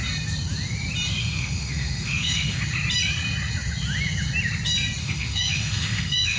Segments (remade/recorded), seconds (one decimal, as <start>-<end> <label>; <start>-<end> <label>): 0.0-1.2 recorded; 1.2-2.6 remade; 2.6-5.0 recorded; 5.0-6.4 remade